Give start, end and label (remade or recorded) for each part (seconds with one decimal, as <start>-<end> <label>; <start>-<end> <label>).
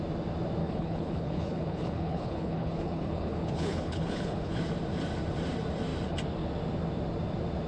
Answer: 0.0-0.6 recorded; 0.6-4.6 remade; 4.6-7.7 recorded